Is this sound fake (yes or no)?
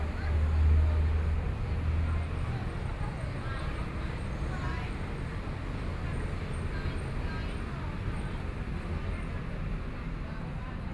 no